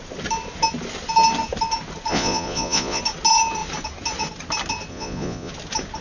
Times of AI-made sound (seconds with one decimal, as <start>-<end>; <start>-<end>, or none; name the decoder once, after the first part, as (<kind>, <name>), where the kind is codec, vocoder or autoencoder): 2.1-3.0 (vocoder, Vocos); 4.9-5.5